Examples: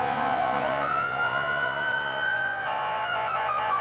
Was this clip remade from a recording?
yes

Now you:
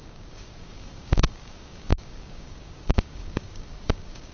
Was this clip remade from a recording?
yes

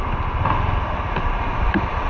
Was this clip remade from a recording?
no